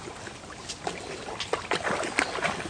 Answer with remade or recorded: recorded